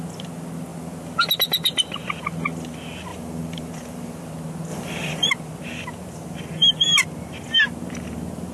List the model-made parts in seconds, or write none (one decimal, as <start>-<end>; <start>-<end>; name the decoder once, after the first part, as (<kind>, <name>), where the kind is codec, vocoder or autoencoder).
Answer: 3.1-4.3 (vocoder, BigVGAN v2); 4.7-5.3